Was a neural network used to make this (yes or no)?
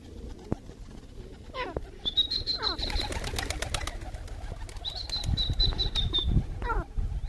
no